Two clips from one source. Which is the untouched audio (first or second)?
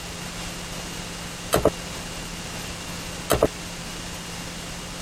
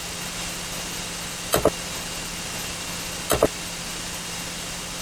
first